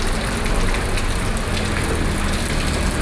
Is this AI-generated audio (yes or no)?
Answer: no